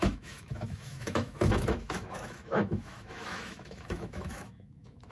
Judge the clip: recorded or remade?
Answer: remade